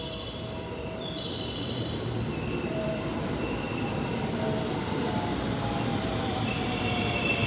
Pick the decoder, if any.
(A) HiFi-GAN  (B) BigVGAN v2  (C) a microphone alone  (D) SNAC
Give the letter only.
B